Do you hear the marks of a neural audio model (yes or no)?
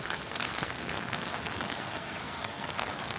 yes